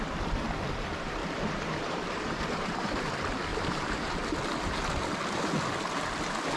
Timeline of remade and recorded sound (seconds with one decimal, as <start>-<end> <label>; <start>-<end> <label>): 0.0-1.2 recorded; 1.2-3.1 remade; 3.1-3.5 recorded; 3.5-4.2 remade; 4.2-6.6 recorded